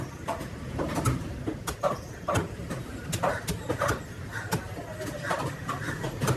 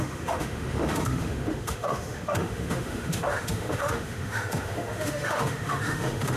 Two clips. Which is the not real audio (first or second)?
second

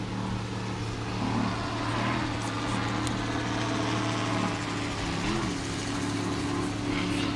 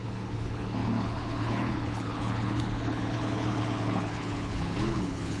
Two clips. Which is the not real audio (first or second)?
second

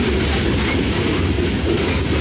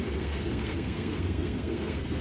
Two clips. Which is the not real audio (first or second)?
second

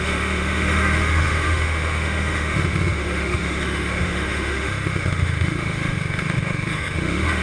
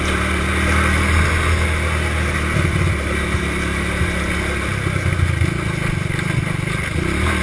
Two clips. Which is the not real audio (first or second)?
first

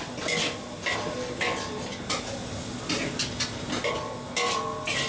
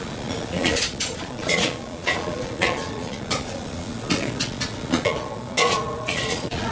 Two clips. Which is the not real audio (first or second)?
second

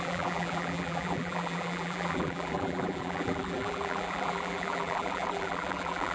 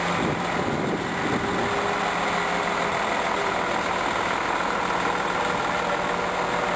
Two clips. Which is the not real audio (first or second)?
first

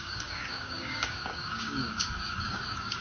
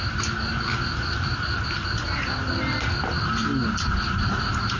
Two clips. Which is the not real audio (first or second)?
first